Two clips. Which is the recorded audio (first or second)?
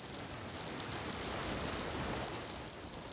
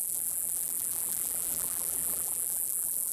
first